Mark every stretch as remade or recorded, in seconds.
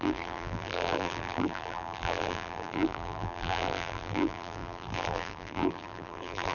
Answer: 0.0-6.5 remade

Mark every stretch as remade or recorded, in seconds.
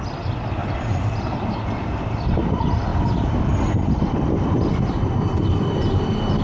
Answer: 0.0-0.6 recorded; 0.6-1.2 remade; 1.2-2.9 recorded; 2.9-4.4 remade; 4.4-6.4 recorded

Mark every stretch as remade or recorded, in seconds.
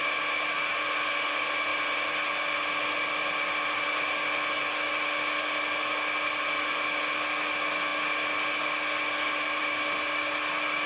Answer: 0.0-10.9 recorded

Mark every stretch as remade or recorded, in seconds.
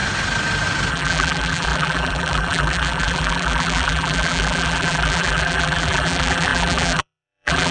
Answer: 0.0-0.9 recorded; 0.9-7.7 remade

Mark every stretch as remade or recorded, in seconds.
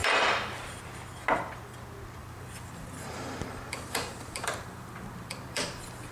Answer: 0.0-0.8 remade; 0.8-2.2 recorded; 2.2-6.1 remade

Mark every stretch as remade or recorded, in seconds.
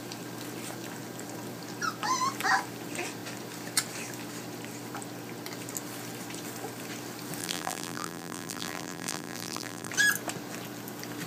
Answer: 0.0-7.4 recorded; 7.4-9.9 remade; 9.9-11.3 recorded